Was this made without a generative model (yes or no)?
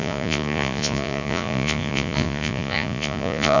no